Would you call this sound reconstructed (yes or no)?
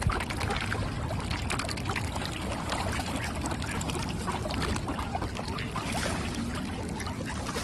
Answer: no